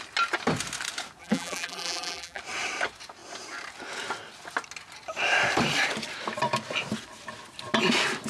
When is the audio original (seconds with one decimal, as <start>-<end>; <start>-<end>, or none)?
0.0-1.2; 2.4-8.3